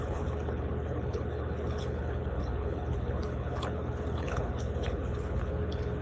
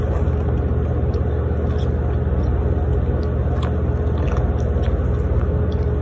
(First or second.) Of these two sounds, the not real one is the first